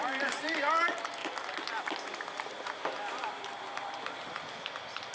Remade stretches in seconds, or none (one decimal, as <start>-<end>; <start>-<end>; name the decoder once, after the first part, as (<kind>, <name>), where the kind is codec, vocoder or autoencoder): none